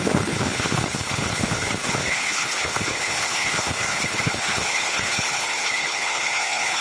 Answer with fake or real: fake